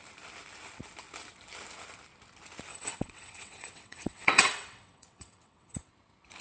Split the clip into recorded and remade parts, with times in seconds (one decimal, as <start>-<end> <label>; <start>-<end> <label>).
0.0-2.7 recorded; 2.7-5.9 remade; 5.9-6.4 recorded